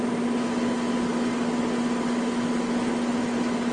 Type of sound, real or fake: real